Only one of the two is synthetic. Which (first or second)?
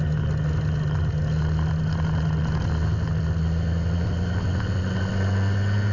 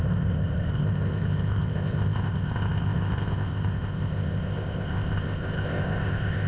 second